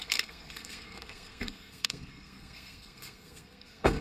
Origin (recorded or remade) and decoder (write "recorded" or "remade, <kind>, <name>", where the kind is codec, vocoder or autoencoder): remade, codec, SNAC